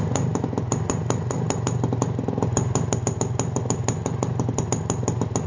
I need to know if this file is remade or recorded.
recorded